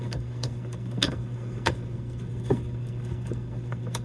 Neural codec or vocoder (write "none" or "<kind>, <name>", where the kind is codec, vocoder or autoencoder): codec, SNAC